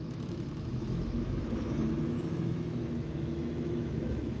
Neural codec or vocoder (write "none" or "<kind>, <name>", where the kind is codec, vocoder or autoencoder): autoencoder, DAC-VAE